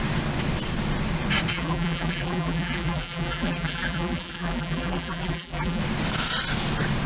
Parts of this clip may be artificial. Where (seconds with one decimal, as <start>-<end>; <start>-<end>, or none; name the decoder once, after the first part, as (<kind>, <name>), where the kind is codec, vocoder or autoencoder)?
1.5-5.8 (vocoder, BigVGAN v2)